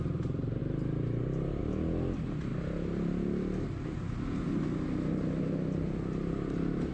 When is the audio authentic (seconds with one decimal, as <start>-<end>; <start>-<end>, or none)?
0.0-6.9